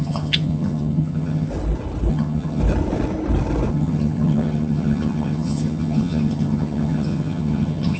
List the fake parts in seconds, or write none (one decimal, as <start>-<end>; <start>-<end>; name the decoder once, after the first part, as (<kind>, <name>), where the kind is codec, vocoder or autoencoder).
0.0-1.5 (vocoder, HiFi-GAN); 2.1-2.6; 3.7-8.0